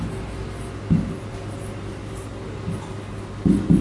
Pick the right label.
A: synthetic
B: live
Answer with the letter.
B